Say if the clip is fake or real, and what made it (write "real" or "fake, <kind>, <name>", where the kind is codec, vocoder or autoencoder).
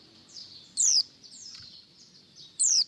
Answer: fake, vocoder, BigVGAN v2